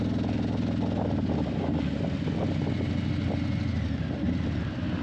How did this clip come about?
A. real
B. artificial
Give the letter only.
A